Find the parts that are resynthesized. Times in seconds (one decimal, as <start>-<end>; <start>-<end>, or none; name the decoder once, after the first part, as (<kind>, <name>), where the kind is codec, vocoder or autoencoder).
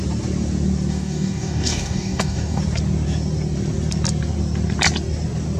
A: 0.9-2.6 (codec, DAC)